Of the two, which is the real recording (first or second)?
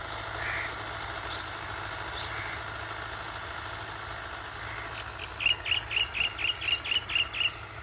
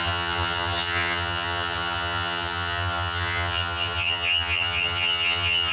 first